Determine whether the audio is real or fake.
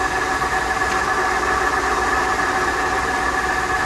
real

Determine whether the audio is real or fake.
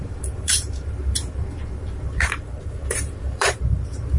fake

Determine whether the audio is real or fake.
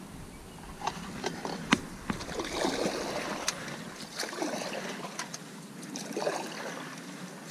real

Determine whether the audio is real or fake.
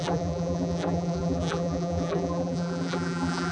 fake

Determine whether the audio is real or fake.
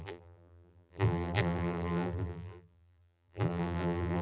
fake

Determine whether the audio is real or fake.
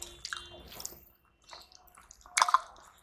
real